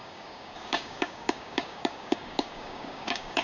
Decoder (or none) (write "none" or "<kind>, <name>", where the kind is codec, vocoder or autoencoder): codec, DAC